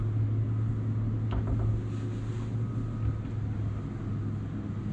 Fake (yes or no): no